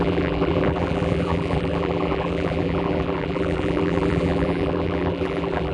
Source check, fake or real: fake